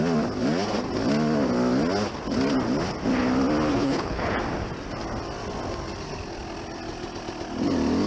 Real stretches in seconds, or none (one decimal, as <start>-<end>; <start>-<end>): 0.0-3.7; 4.3-8.1